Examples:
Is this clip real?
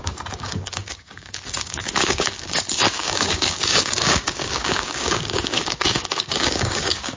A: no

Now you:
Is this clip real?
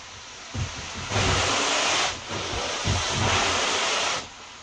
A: yes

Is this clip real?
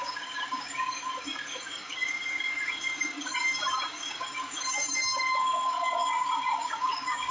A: no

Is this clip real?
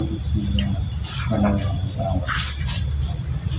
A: yes